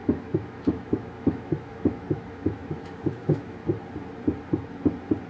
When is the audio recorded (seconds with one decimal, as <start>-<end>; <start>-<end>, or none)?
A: 3.6-5.3